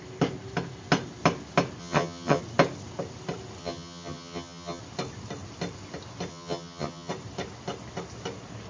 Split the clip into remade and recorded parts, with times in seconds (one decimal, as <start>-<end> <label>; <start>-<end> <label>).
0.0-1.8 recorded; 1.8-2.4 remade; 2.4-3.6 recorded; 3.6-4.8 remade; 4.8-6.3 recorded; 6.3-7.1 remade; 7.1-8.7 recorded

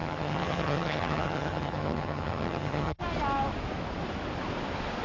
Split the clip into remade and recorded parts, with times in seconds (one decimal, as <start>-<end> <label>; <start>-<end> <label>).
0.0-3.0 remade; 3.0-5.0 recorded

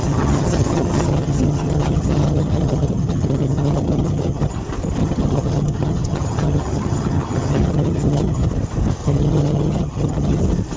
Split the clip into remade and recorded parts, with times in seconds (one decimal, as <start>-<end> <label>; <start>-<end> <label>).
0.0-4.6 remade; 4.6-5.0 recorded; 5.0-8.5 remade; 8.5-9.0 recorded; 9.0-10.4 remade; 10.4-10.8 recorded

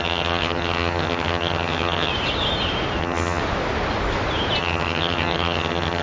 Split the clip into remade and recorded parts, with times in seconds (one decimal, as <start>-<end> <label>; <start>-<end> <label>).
0.0-2.1 remade; 2.1-3.0 recorded; 3.0-3.4 remade; 3.4-4.6 recorded; 4.6-6.0 remade

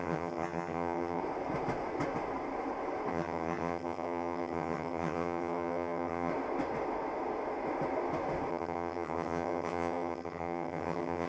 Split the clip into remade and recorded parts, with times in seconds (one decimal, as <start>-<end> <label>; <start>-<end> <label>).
0.0-1.2 remade; 1.2-3.1 recorded; 3.1-6.3 remade; 6.3-8.5 recorded; 8.5-11.3 remade